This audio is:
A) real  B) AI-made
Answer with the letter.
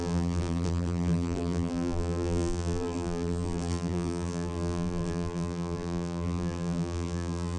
B